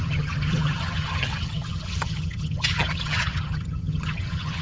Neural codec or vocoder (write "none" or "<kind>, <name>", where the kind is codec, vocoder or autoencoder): vocoder, HiFi-GAN